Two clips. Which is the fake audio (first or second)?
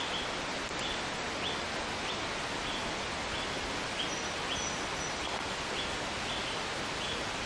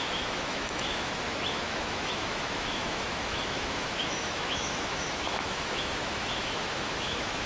second